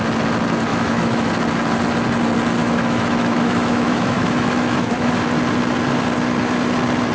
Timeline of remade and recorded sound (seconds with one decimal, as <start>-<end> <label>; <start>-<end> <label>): 0.0-0.7 recorded; 0.7-1.3 remade; 1.3-2.6 recorded; 2.6-5.1 remade; 5.1-7.1 recorded

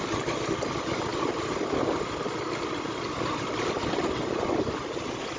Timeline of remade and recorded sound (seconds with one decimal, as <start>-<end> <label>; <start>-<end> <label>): 0.0-5.4 recorded

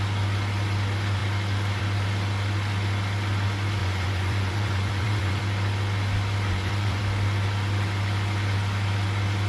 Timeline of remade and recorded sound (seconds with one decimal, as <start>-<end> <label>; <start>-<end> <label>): 0.0-3.8 recorded; 3.8-5.4 remade; 5.4-6.5 recorded; 6.5-7.0 remade; 7.0-9.5 recorded

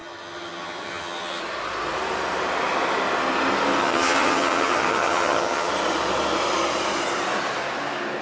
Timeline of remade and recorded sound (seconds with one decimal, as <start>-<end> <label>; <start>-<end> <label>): 0.0-1.4 remade; 1.4-3.8 recorded; 3.8-5.7 remade; 5.7-8.2 recorded

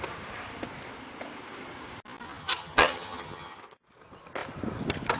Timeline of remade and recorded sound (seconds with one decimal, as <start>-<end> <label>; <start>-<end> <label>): 0.0-2.4 recorded; 2.4-3.6 remade; 3.6-5.2 recorded

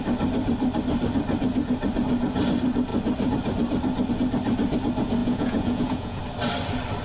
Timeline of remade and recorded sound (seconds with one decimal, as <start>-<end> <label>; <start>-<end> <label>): 0.0-5.2 recorded; 5.2-6.2 remade; 6.2-7.0 recorded

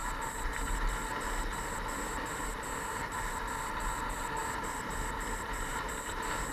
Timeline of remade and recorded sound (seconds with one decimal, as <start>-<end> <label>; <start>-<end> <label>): 0.0-3.9 recorded; 3.9-6.5 remade